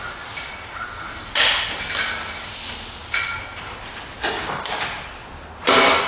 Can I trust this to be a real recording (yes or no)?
yes